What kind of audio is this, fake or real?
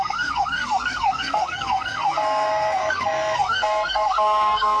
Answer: fake